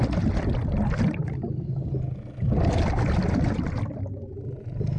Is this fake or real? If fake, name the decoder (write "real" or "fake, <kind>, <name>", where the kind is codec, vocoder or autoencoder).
real